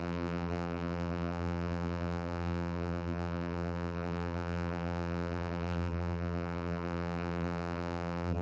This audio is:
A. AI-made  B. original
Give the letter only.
A